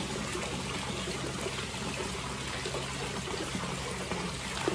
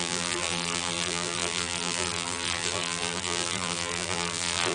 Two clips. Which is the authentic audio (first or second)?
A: first